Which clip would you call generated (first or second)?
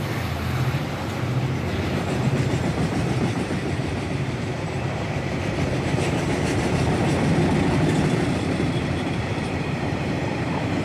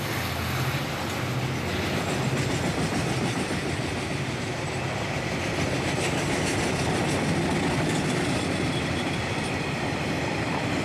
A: first